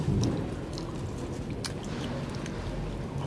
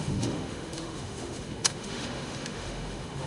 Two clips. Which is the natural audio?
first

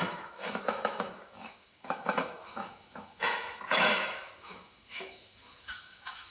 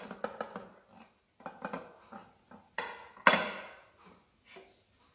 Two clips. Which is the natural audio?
second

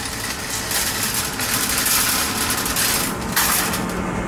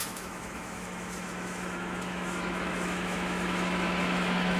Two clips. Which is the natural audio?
first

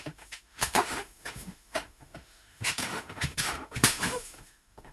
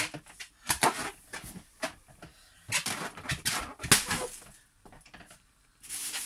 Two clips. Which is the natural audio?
second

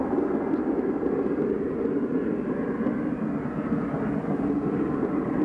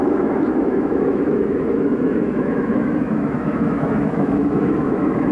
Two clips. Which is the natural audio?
first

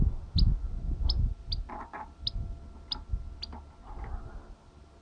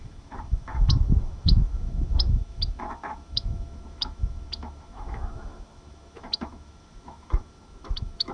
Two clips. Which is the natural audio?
first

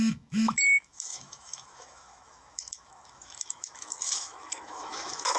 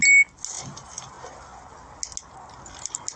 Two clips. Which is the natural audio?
second